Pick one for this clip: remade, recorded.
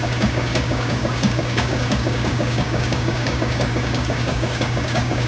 remade